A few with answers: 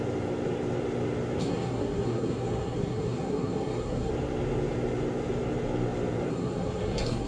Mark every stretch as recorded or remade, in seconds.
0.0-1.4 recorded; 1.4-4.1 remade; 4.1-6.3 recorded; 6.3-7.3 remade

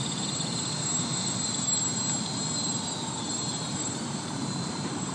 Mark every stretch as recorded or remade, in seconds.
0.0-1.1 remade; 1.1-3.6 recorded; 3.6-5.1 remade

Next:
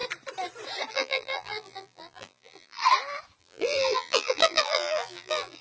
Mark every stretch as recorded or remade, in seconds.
0.0-0.9 recorded; 0.9-2.8 remade; 2.8-3.4 recorded; 3.4-5.6 remade

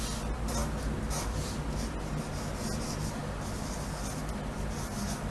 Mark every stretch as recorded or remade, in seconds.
0.0-5.3 recorded

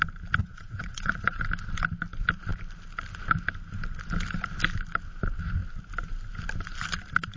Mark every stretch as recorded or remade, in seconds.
0.0-0.4 recorded; 0.4-1.4 remade; 1.4-7.4 recorded

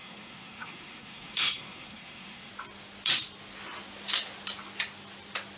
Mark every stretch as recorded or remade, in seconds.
0.0-2.5 remade; 2.5-5.6 recorded

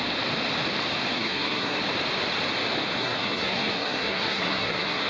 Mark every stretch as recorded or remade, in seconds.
0.0-1.1 recorded; 1.1-1.8 remade; 1.8-3.0 recorded; 3.0-5.1 remade

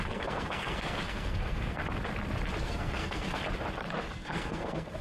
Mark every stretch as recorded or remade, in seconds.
0.0-1.8 remade; 1.8-2.6 recorded; 2.6-3.4 remade; 3.4-4.0 recorded; 4.0-5.0 remade